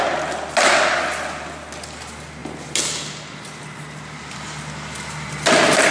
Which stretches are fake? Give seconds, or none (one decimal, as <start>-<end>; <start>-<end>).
none